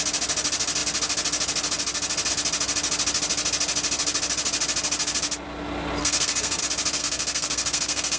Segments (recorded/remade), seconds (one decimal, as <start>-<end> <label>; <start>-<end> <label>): 0.0-6.0 recorded; 6.0-6.6 remade; 6.6-7.0 recorded; 7.0-8.2 remade